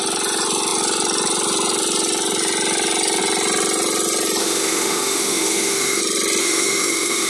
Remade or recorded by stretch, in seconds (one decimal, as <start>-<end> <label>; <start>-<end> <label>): 0.0-4.4 recorded; 4.4-6.0 remade; 6.0-6.4 recorded; 6.4-7.3 remade